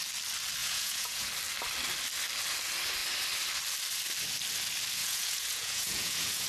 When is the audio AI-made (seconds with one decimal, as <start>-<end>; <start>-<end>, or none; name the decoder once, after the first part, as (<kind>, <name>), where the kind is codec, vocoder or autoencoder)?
0.6-1.3 (vocoder, Vocos); 5.0-6.5